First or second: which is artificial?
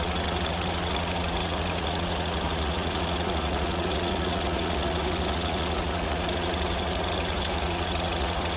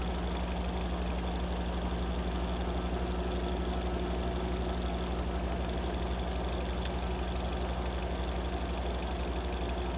first